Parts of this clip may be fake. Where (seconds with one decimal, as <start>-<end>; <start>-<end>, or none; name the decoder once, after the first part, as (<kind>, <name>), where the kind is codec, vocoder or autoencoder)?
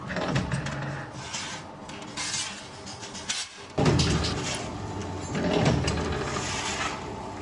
none